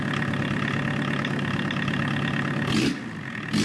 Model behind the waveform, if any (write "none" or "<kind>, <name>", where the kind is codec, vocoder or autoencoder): none